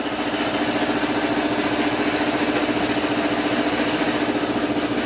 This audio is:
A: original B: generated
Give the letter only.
A